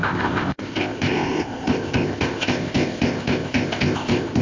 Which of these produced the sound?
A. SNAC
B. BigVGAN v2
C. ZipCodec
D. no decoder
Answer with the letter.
C